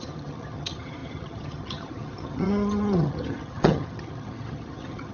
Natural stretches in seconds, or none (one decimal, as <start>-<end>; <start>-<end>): none